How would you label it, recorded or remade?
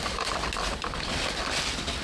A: recorded